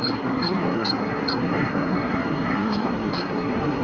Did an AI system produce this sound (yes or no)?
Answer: yes